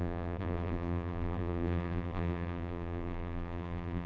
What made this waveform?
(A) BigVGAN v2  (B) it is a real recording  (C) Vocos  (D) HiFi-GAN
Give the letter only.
A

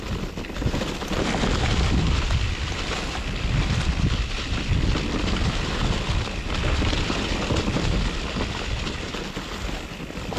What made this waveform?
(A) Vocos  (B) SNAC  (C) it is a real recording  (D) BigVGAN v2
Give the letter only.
C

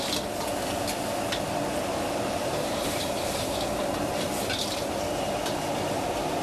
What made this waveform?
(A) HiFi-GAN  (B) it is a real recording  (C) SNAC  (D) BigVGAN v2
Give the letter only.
B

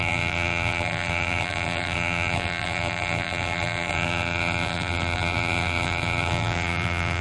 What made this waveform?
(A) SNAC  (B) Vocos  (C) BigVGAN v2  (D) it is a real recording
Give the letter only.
C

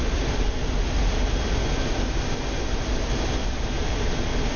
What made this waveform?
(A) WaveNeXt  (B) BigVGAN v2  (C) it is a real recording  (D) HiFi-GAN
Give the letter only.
C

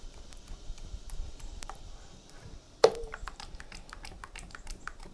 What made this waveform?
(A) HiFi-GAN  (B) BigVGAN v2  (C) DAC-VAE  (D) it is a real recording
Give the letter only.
B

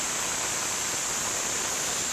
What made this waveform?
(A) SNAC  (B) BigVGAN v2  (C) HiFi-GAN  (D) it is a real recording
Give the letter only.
B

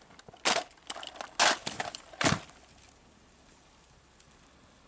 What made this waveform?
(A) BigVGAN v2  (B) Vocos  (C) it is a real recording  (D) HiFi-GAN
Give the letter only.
C